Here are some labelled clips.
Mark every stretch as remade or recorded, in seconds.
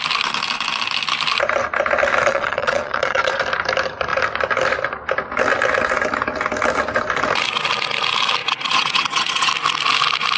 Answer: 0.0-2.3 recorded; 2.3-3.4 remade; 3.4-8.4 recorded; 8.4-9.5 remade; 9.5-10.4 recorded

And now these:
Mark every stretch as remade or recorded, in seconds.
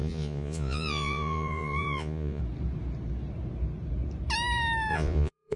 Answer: 0.0-2.4 remade; 2.4-4.9 recorded; 4.9-5.6 remade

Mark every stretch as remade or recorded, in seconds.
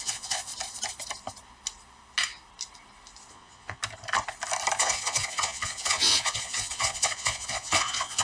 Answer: 0.0-0.5 remade; 0.5-3.3 recorded; 3.3-3.8 remade; 3.8-4.8 recorded; 4.8-8.2 remade